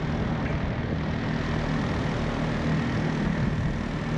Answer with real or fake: real